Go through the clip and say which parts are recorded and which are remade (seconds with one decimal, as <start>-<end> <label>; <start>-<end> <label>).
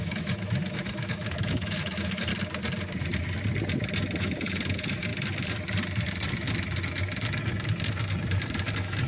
0.0-2.3 remade; 2.3-4.2 recorded; 4.2-5.1 remade; 5.1-8.7 recorded; 8.7-9.1 remade